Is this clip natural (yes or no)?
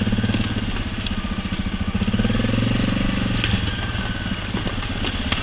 yes